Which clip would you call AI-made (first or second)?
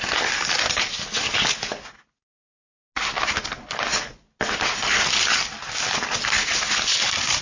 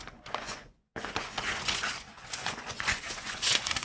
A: second